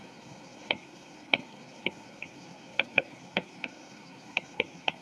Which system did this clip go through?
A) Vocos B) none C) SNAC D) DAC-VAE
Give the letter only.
C